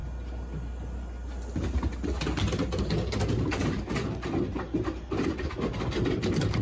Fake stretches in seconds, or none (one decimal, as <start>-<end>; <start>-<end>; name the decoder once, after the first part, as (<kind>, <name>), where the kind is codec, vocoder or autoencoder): none